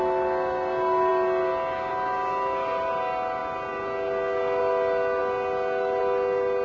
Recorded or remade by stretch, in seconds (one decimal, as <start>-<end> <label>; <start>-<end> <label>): 0.0-6.6 recorded